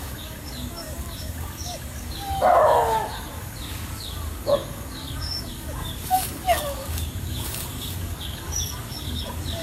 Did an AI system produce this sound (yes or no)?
yes